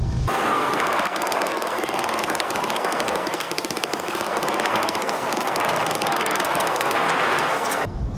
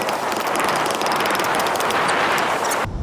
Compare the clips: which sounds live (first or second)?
second